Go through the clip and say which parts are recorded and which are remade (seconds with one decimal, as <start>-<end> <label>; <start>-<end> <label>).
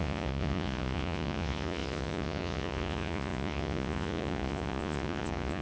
0.0-5.6 remade